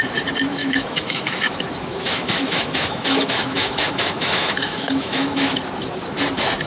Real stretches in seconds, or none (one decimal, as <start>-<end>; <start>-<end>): 0.0-0.6; 1.5-1.9; 5.6-6.7